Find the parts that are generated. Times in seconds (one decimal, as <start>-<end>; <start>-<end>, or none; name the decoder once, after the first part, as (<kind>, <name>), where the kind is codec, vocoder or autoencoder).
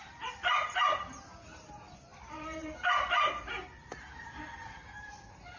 2.1-3.1 (vocoder, BigVGAN v2)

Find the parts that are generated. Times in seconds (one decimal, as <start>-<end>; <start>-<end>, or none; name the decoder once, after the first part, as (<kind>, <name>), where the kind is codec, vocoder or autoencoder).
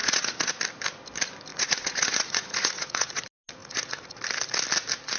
0.0-0.5 (vocoder, Vocos); 1.5-3.2; 3.6-4.2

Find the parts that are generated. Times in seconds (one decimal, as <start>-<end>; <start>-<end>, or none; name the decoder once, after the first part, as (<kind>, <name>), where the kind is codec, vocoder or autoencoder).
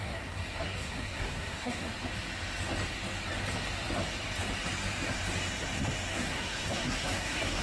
0.0-1.9 (codec, SNAC); 6.1-7.6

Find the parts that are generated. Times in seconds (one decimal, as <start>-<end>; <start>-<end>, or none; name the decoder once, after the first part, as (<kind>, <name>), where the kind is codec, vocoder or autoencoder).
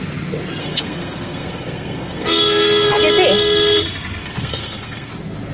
0.6-3.0 (codec, SNAC); 4.2-5.1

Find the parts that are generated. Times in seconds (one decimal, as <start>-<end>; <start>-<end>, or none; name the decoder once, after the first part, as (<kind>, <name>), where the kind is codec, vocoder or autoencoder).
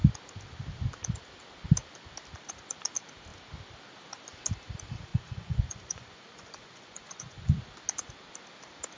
5.1-7.6 (vocoder, Vocos)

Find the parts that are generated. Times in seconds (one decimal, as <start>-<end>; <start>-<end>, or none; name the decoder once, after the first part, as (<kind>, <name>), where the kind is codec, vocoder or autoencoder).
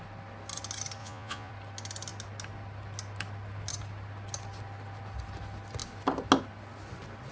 1.0-1.5 (vocoder, Vocos)